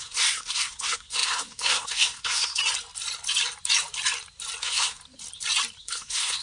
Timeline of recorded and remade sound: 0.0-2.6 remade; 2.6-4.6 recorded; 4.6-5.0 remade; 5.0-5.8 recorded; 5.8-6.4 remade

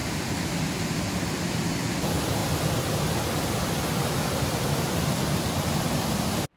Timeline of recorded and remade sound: 0.0-6.6 recorded

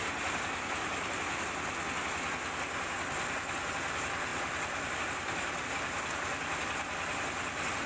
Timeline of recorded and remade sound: 0.0-7.9 recorded

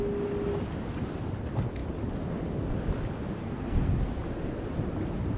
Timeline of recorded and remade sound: 0.0-3.4 recorded; 3.4-4.0 remade; 4.0-5.4 recorded

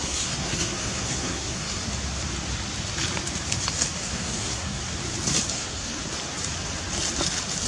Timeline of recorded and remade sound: 0.0-1.8 remade; 1.8-4.0 recorded; 4.0-4.8 remade; 4.8-5.5 recorded; 5.5-6.0 remade; 6.0-7.7 recorded

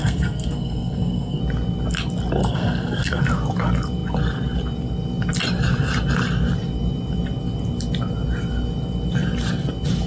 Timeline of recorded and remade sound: 0.0-1.4 remade; 1.4-2.4 recorded; 2.4-3.2 remade; 3.2-10.1 recorded

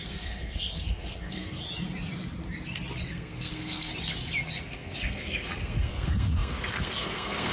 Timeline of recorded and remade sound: 0.0-1.6 remade; 1.6-3.0 recorded; 3.0-3.9 remade; 3.9-4.6 recorded; 4.6-7.5 remade

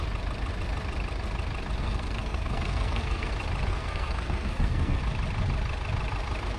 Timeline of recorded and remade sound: 0.0-1.8 recorded; 1.8-3.3 remade; 3.3-3.7 recorded; 3.7-5.0 remade; 5.0-6.6 recorded